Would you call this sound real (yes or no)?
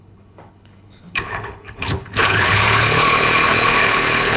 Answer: no